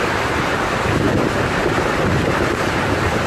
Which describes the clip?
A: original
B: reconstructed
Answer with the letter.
B